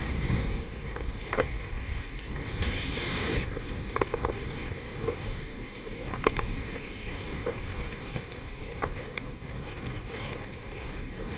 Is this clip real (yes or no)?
no